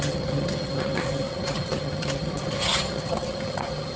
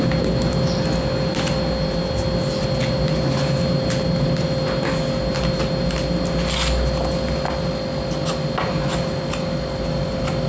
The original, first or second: second